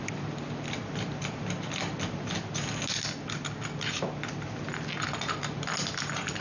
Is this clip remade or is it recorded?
recorded